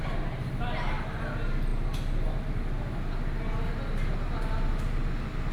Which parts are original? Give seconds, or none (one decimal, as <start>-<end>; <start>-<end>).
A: 0.0-5.5